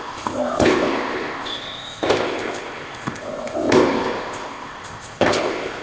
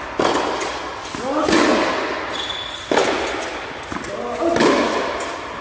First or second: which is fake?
first